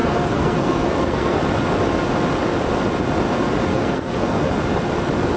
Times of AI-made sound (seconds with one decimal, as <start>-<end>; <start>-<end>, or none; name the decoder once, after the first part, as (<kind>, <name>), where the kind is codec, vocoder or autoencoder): 0.0-1.4 (codec, SNAC); 3.7-4.5